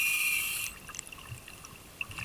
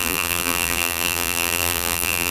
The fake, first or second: second